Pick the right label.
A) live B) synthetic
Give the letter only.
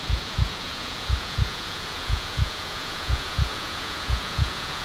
B